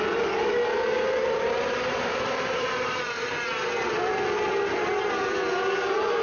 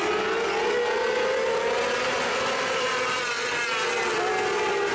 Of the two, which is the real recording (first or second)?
second